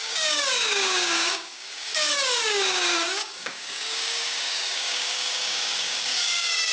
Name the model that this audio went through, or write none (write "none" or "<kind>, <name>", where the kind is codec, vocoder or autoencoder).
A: codec, DAC